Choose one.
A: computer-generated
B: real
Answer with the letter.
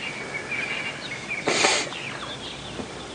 B